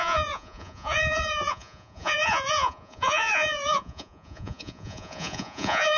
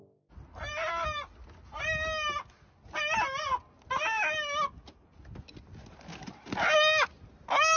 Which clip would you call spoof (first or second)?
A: first